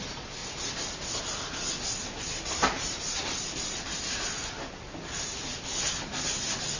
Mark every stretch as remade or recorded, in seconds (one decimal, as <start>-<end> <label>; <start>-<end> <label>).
0.0-6.8 recorded